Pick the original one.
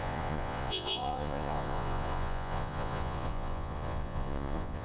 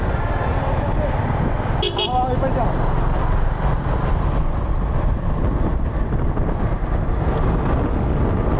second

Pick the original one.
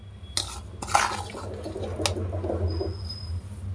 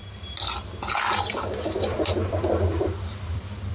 first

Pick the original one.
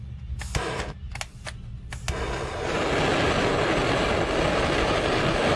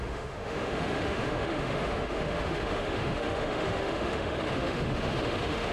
first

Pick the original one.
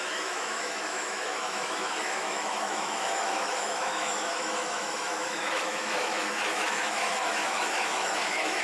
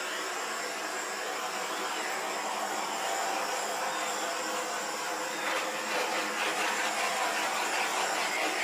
second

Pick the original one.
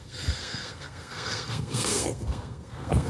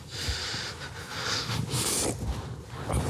second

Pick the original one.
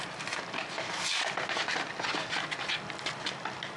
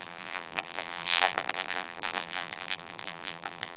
first